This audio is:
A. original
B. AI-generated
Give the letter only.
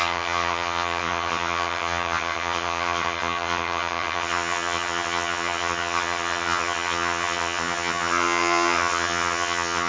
B